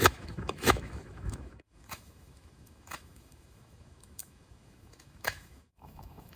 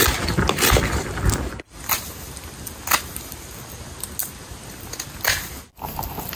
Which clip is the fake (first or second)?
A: first